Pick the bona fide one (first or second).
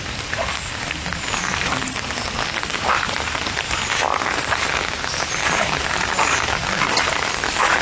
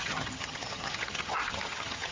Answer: first